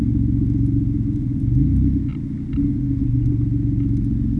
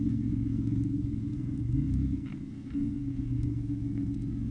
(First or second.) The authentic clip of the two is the first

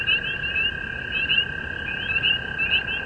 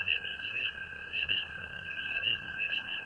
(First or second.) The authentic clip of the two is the first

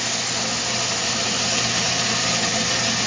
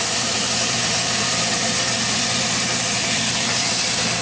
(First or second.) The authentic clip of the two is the first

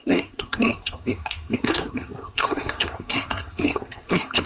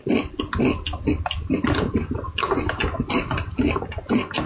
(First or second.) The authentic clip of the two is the second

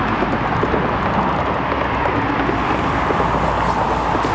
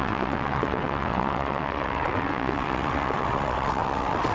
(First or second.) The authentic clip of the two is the first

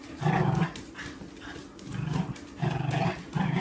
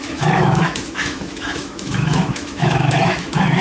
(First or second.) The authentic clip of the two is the first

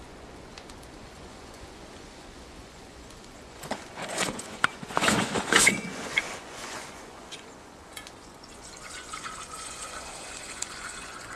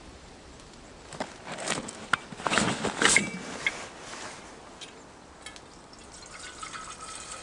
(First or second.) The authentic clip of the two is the second